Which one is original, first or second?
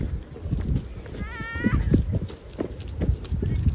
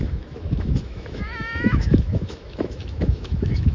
first